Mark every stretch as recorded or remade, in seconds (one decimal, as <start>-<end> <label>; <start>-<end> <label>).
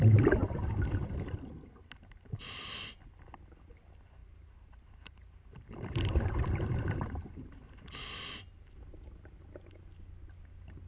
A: 0.0-0.4 recorded; 0.4-1.3 remade; 1.3-4.2 recorded; 4.2-7.1 remade; 7.1-10.9 recorded